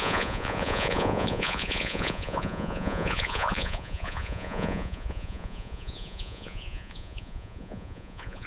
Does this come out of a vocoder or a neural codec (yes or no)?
yes